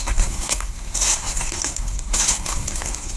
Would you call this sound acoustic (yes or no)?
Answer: no